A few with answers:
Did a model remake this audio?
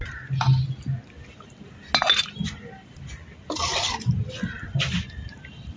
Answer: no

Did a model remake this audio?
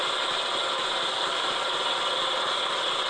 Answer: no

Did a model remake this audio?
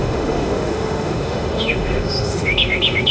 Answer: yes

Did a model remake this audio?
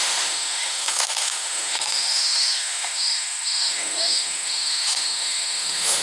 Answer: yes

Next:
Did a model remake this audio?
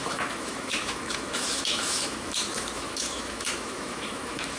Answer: yes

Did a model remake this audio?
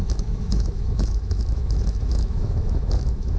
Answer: yes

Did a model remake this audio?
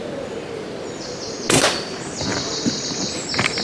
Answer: no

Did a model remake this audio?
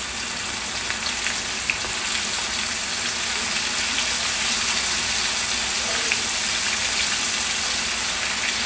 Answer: no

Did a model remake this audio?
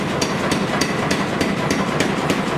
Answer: no